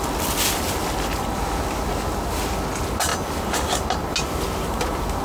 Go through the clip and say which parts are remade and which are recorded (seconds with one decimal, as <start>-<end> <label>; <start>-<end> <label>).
0.0-5.2 recorded